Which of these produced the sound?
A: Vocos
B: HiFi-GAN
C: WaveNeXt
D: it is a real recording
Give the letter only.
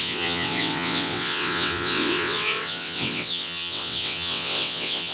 C